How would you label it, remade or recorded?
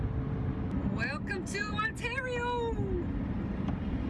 recorded